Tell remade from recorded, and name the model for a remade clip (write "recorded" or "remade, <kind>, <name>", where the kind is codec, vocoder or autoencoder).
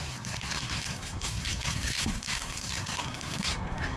remade, codec, SNAC